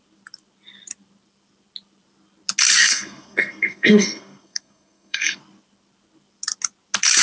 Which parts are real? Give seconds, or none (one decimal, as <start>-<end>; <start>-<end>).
0.0-2.8; 5.4-7.2